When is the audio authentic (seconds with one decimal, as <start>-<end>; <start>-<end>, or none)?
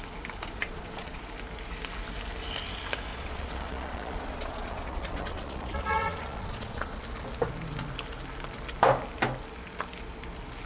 0.0-0.4; 1.2-3.1; 7.0-10.7